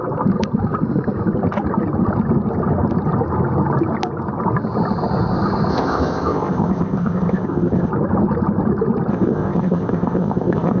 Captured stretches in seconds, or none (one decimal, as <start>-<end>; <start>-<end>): 0.0-5.7; 7.9-9.1